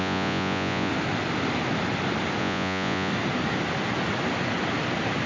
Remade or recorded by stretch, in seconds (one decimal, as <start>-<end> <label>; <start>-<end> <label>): 0.0-0.9 remade; 0.9-2.4 recorded; 2.4-3.1 remade; 3.1-5.3 recorded